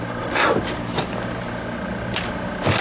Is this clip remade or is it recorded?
recorded